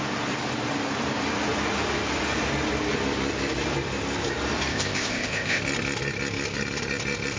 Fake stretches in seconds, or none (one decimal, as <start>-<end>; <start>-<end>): 4.7-5.6